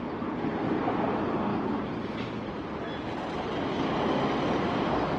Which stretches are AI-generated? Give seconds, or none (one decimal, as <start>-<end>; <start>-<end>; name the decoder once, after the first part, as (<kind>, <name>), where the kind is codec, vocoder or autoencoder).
none